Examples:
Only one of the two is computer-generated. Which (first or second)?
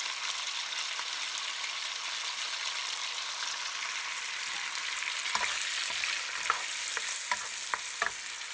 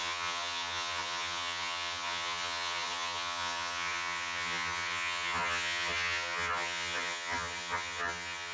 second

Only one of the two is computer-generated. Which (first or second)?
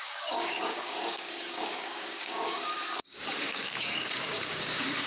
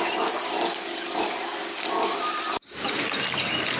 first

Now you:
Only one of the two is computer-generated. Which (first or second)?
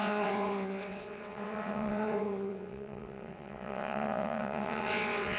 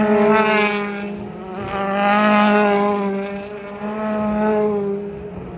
first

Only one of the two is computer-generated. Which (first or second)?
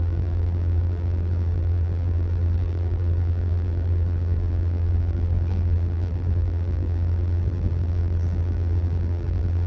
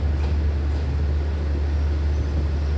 first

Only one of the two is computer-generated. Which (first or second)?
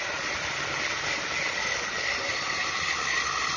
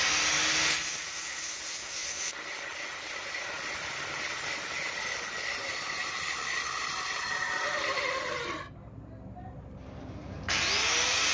first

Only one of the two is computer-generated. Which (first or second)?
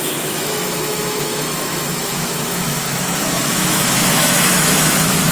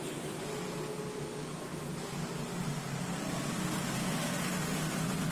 first